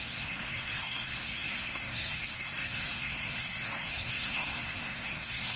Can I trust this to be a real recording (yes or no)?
no